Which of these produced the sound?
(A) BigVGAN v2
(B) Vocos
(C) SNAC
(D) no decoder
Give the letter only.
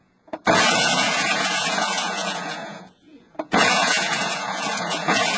B